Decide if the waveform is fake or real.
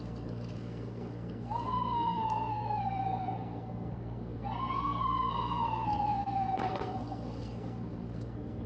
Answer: fake